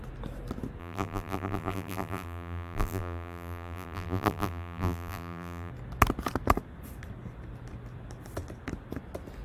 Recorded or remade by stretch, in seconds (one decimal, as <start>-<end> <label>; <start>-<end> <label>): 0.0-0.8 recorded; 0.8-5.7 remade; 5.7-9.4 recorded